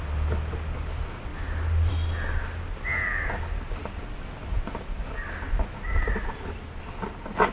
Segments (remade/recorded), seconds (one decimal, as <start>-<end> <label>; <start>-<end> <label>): 0.0-7.5 recorded